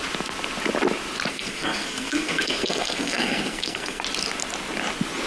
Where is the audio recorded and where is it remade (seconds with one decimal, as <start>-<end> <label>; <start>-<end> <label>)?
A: 0.0-1.3 recorded; 1.3-4.0 remade; 4.0-5.3 recorded